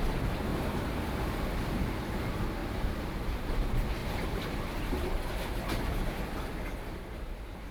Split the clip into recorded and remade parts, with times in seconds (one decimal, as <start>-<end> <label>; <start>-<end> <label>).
0.0-0.5 recorded; 0.5-1.2 remade; 1.2-2.6 recorded; 2.6-3.5 remade; 3.5-4.0 recorded; 4.0-5.2 remade; 5.2-7.7 recorded